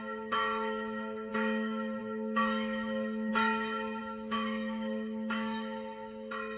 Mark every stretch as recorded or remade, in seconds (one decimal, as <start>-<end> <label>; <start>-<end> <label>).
0.0-6.6 remade